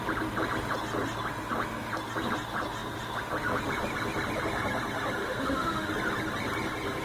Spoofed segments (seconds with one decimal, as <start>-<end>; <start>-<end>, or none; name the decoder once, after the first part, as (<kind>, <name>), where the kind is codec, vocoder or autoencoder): 5.2-5.9 (autoencoder, DAC-VAE)